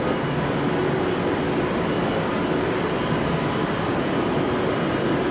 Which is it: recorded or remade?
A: remade